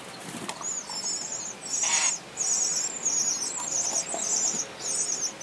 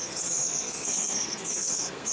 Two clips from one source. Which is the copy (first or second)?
second